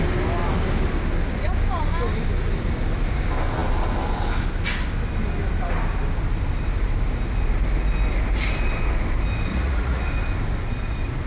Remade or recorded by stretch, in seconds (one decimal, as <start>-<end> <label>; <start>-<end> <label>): 0.0-9.5 recorded; 9.5-10.1 remade; 10.1-11.3 recorded